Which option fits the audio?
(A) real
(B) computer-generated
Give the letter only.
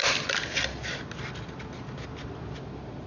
A